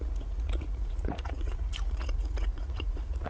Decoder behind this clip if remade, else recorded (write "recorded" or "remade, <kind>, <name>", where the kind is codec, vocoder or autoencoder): remade, vocoder, Vocos